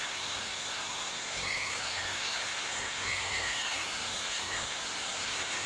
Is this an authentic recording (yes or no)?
no